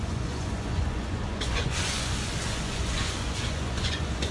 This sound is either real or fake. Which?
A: fake